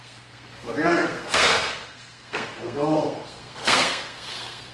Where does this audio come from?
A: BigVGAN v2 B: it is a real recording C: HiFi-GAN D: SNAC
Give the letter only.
D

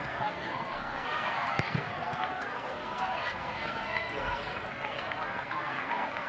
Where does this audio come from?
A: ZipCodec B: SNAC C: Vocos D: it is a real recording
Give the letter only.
B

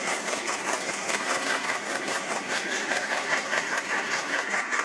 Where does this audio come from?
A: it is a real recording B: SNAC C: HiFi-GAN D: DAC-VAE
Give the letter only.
B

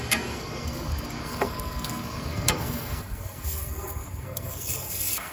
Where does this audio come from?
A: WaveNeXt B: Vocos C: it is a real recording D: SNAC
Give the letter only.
D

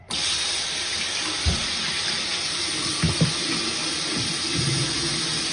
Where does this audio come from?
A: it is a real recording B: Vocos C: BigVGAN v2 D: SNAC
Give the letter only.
A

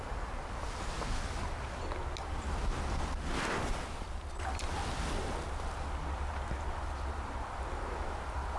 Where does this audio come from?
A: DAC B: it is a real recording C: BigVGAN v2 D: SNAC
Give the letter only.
B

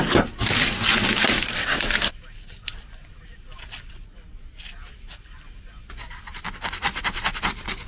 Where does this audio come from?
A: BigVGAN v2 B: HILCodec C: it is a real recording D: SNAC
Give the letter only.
C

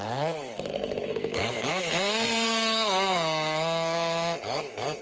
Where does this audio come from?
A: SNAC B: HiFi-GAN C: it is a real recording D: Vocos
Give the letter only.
A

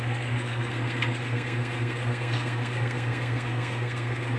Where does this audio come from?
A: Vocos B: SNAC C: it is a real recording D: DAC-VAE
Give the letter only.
B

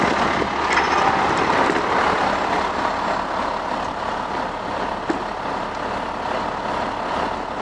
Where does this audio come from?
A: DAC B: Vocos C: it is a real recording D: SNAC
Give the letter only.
C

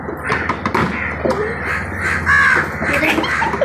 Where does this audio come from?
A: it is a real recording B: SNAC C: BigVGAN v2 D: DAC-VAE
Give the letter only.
A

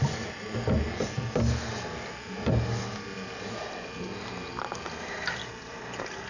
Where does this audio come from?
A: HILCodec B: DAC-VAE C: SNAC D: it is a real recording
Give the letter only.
D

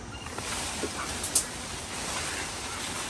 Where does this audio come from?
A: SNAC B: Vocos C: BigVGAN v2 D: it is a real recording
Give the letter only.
D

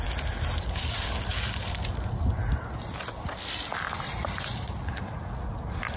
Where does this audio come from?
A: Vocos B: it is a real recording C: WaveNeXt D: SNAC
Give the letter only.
B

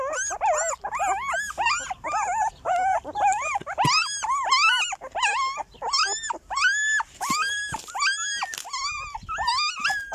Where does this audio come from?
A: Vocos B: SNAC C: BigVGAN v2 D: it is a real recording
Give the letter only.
D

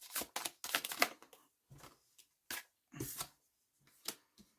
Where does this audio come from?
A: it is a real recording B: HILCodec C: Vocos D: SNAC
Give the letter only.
A